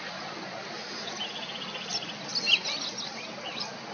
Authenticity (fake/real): real